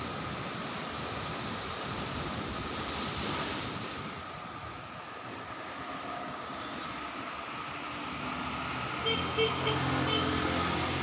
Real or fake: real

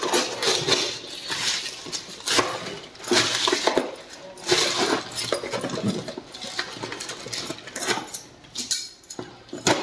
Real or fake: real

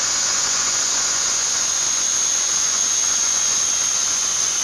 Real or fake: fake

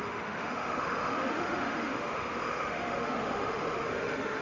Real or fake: fake